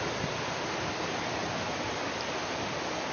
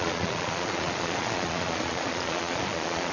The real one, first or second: first